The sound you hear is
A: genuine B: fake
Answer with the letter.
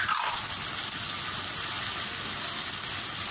A